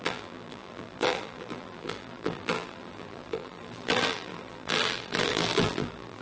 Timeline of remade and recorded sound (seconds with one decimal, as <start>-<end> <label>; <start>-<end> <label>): 0.0-6.2 remade